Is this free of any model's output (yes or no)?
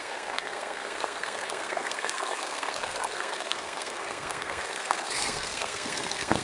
no